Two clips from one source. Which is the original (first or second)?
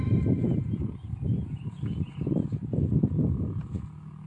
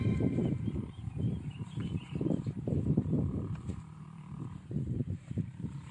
first